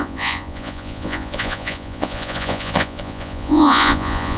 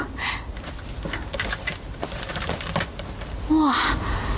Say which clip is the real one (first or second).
second